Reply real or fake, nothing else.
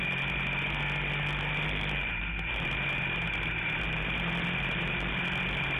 real